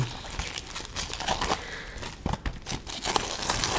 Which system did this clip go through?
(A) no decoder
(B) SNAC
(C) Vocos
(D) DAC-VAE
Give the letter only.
A